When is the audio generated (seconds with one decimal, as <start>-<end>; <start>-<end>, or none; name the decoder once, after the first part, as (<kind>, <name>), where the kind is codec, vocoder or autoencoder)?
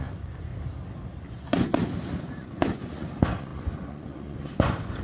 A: 0.0-0.5 (vocoder, Vocos); 1.2-1.7; 2.3-5.0